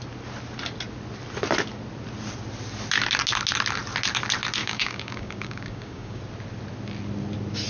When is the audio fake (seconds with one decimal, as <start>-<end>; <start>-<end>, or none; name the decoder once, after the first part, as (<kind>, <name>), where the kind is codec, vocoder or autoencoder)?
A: 4.6-6.2 (codec, DAC)